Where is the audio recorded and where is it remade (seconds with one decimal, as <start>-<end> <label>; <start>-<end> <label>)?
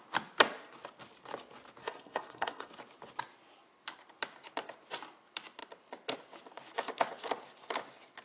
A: 0.0-1.8 recorded; 1.8-2.7 remade; 2.7-8.2 recorded